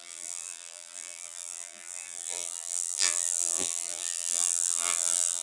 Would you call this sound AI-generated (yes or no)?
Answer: yes